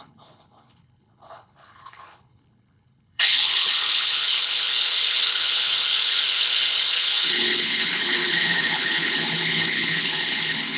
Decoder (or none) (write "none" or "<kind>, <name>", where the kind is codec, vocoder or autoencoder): codec, HILCodec